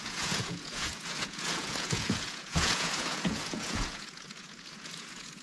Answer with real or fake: fake